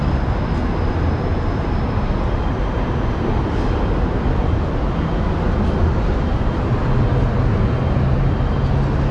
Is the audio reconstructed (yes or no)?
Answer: no